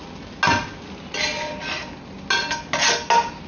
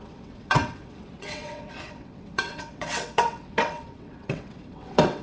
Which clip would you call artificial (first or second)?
second